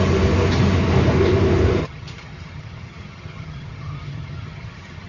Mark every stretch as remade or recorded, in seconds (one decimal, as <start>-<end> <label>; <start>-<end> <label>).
0.0-1.8 recorded; 1.8-5.1 remade